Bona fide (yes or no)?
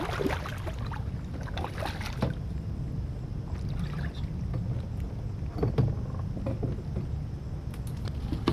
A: yes